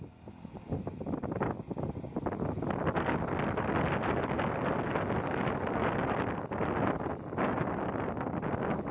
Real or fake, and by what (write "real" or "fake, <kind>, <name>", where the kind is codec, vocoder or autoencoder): real